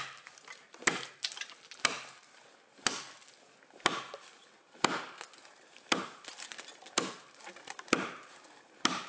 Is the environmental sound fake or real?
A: real